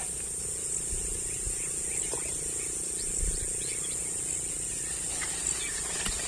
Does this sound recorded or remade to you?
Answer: recorded